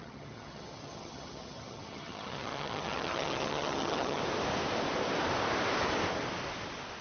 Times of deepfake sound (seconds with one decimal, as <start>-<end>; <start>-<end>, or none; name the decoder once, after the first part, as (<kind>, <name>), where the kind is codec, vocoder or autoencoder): 0.0-4.2 (vocoder, HiFi-GAN)